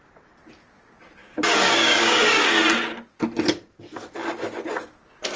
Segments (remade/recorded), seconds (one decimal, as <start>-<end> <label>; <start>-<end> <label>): 0.0-1.2 recorded; 1.2-2.6 remade; 2.6-5.4 recorded

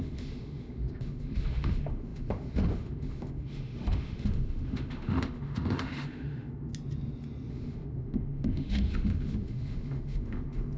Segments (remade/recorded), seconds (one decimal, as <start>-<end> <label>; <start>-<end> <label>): 0.0-6.7 remade; 6.7-7.5 recorded; 7.5-10.8 remade

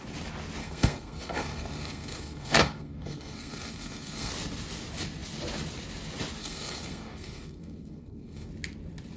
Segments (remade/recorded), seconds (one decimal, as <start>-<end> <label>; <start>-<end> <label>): 0.0-0.6 recorded; 0.6-4.3 remade; 4.3-6.4 recorded; 6.4-8.5 remade; 8.5-9.2 recorded

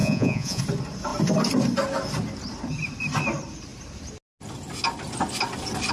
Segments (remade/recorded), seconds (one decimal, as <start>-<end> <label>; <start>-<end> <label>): 0.0-0.6 remade; 0.6-5.9 recorded

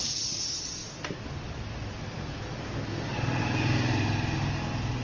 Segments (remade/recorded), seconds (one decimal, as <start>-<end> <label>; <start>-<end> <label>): 0.0-5.0 recorded